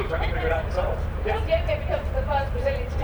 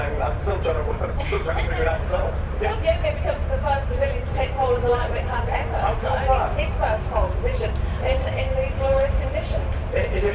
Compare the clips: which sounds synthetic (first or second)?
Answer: second